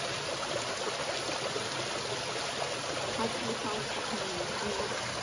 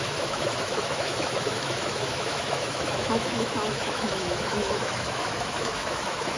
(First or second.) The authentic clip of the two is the first